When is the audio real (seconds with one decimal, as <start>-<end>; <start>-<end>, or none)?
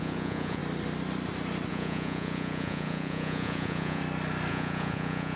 0.6-1.7; 4.0-4.5